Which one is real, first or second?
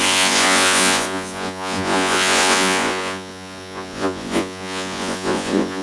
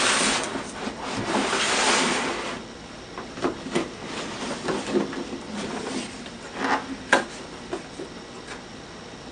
second